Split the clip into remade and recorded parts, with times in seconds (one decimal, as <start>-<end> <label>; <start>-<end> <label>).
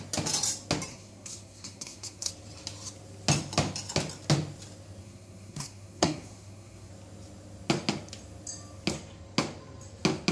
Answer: 0.0-0.9 recorded; 0.9-2.3 remade; 2.3-5.0 recorded; 5.0-6.9 remade; 6.9-10.3 recorded